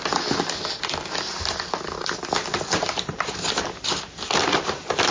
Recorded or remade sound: recorded